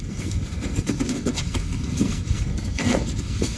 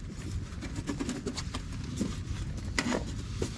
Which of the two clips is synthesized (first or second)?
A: first